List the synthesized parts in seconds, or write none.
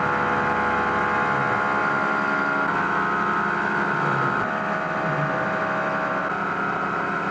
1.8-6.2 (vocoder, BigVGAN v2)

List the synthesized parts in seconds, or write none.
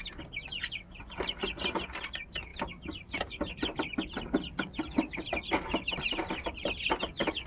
none